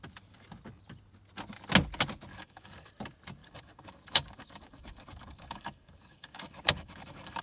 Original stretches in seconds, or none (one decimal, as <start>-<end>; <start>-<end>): 0.0-2.3; 2.9-3.4